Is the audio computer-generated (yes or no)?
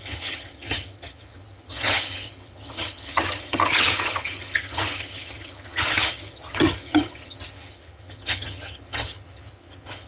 yes